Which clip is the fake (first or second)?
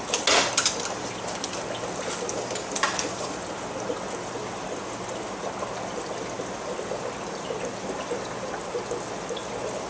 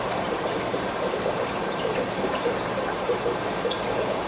second